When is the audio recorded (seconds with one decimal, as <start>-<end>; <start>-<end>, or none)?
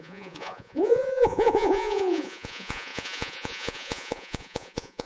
none